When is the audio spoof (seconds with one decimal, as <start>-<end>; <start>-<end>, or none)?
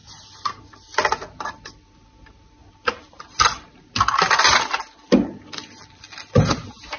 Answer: none